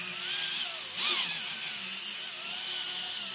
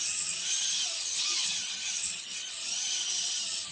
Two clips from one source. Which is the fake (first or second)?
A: second